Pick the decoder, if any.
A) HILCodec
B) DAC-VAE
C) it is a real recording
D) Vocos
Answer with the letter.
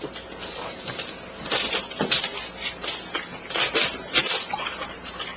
C